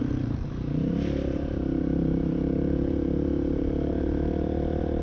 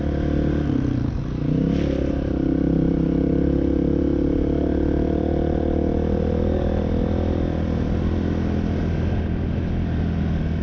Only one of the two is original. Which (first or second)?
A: second